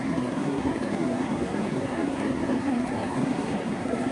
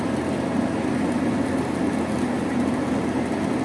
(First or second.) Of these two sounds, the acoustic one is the second